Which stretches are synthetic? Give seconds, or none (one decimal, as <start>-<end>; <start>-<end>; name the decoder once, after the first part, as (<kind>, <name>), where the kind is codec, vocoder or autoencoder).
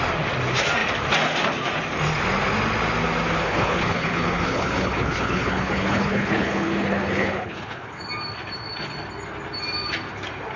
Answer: 3.4-8.0 (codec, HILCodec)